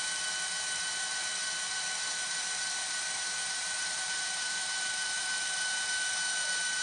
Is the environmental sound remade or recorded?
remade